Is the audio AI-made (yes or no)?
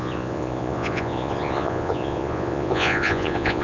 yes